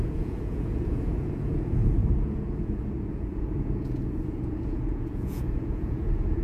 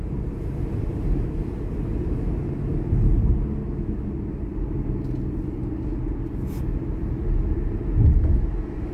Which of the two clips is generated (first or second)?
first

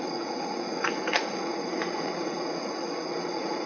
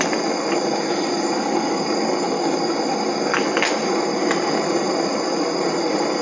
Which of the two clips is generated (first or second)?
first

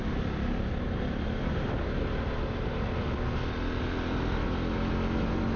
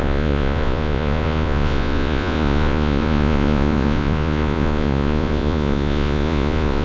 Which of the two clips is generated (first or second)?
second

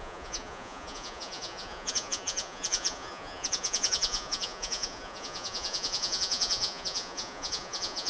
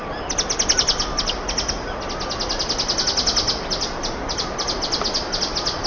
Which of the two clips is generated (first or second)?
first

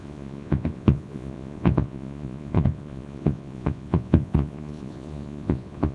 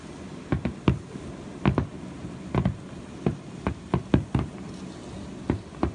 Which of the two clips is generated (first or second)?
first